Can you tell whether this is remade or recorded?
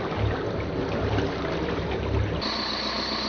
recorded